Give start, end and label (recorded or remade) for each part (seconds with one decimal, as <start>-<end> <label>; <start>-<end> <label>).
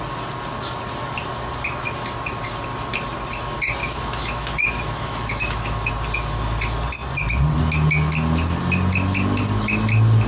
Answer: 0.0-3.8 recorded; 3.8-5.9 remade; 5.9-10.3 recorded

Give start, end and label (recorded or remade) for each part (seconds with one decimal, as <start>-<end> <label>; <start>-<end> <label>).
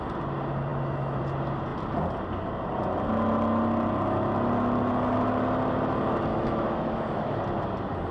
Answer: 0.0-0.7 recorded; 0.7-1.2 remade; 1.2-6.3 recorded; 6.3-7.4 remade; 7.4-8.1 recorded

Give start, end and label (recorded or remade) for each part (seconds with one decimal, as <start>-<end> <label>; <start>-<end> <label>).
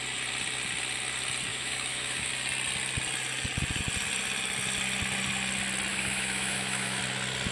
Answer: 0.0-1.5 recorded; 1.5-2.3 remade; 2.3-5.9 recorded; 5.9-7.0 remade; 7.0-7.5 recorded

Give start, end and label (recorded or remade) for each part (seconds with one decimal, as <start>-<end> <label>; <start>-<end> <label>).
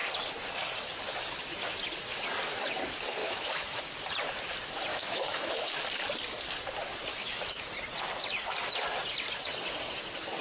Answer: 0.0-3.2 recorded; 3.2-3.8 remade; 3.8-4.9 recorded; 4.9-5.7 remade; 5.7-7.1 recorded; 7.1-7.7 remade; 7.7-10.4 recorded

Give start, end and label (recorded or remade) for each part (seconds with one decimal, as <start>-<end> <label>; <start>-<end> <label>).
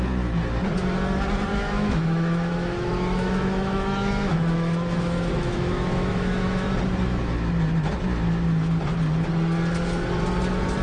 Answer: 0.0-1.5 recorded; 1.5-6.7 remade; 6.7-10.8 recorded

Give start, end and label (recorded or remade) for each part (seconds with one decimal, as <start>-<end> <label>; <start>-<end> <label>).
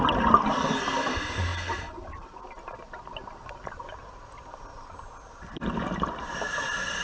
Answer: 0.0-7.0 recorded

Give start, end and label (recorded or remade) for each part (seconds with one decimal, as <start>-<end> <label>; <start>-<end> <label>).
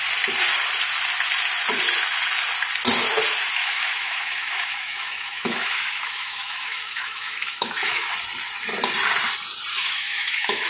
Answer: 0.0-3.6 recorded; 3.6-8.1 remade; 8.1-9.7 recorded; 9.7-10.7 remade